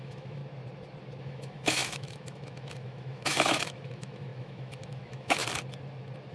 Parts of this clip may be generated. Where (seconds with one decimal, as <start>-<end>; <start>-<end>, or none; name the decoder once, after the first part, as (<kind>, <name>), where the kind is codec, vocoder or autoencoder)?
0.0-0.4 (autoencoder, DAC-VAE); 1.2-5.4